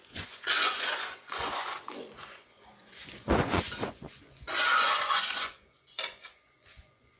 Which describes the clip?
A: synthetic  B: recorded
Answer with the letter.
A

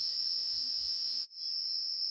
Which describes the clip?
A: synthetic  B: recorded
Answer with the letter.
A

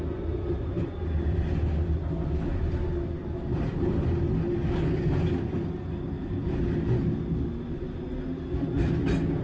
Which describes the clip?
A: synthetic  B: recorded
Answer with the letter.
B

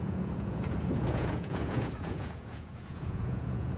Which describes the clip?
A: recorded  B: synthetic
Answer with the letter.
B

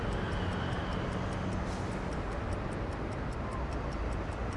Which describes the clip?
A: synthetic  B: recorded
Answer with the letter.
B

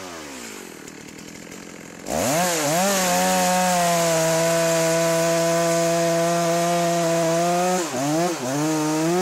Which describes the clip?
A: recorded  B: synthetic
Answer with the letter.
A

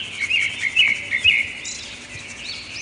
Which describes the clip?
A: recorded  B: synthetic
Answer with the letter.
A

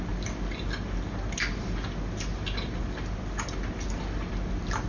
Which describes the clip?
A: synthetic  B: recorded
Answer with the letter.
B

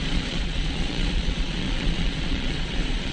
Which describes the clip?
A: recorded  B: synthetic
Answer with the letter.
B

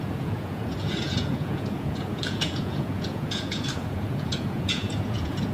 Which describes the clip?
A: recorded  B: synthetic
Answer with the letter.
B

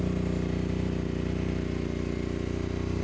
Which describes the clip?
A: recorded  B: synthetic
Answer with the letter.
A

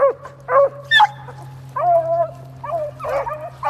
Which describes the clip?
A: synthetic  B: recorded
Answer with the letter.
B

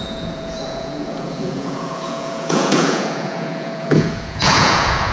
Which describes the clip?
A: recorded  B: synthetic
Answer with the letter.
B